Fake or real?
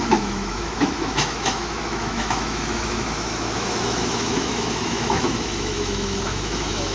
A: fake